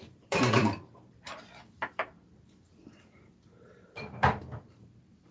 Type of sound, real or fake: fake